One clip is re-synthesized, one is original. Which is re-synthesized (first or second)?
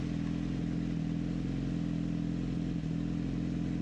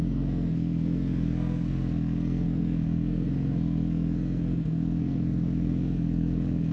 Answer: second